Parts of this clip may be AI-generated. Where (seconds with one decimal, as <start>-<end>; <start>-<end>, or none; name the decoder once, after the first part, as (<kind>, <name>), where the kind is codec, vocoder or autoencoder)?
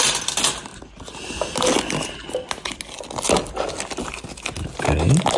none